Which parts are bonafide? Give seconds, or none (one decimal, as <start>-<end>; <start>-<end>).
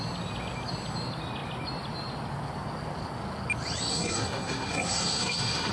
0.0-3.9